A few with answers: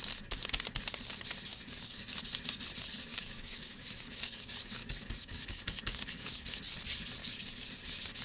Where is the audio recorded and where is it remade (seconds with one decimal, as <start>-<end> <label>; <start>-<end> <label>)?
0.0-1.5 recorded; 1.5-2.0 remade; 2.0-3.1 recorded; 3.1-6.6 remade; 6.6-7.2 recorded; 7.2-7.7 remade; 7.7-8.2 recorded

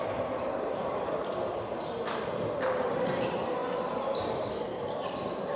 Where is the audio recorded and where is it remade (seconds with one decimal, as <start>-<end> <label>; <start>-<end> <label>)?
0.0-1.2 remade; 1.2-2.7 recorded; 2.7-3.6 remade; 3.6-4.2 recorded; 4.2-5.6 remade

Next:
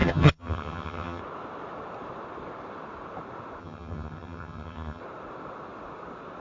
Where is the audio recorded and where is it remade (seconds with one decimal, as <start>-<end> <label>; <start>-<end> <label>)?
0.0-1.2 remade; 1.2-3.6 recorded; 3.6-5.0 remade; 5.0-6.4 recorded

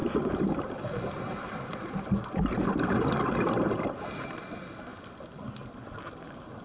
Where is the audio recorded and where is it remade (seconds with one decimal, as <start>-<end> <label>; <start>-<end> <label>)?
0.0-6.6 recorded

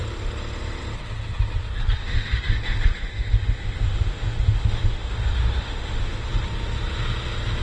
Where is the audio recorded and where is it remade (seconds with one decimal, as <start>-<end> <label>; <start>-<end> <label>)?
0.0-2.0 recorded; 2.0-6.3 remade; 6.3-7.6 recorded

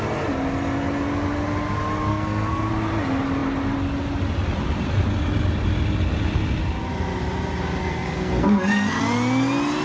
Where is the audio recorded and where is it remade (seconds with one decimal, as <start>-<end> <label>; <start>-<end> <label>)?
0.0-2.1 recorded; 2.1-2.7 remade; 2.7-7.8 recorded; 7.8-9.0 remade; 9.0-9.8 recorded